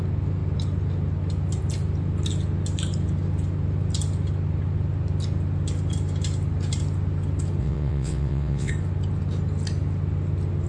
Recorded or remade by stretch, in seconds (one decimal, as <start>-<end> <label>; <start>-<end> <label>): 0.0-7.6 recorded; 7.6-8.7 remade; 8.7-10.7 recorded